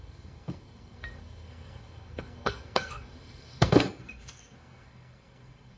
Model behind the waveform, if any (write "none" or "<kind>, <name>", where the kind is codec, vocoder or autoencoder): codec, SNAC